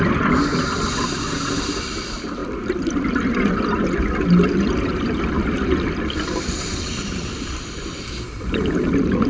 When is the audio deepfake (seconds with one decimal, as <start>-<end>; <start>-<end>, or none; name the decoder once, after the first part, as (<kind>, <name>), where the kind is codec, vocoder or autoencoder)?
0.0-0.5 (vocoder, BigVGAN v2); 1.8-9.3